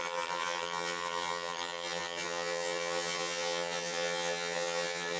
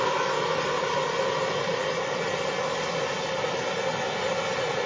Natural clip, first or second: second